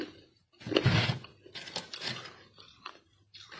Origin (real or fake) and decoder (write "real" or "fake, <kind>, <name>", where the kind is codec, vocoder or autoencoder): real